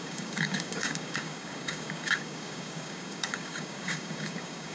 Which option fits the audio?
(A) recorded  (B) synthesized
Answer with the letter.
B